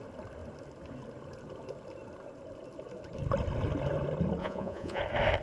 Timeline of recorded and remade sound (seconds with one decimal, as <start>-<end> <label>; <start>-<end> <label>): 0.0-4.4 recorded; 4.4-5.0 remade; 5.0-5.4 recorded